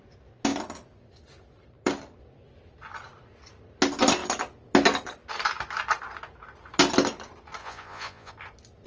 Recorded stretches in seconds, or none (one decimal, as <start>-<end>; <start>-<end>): 0.0-7.6; 8.3-8.9